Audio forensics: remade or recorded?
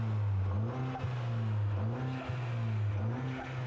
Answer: recorded